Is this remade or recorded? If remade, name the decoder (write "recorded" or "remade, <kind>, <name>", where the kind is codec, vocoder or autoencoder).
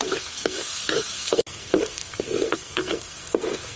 remade, codec, SNAC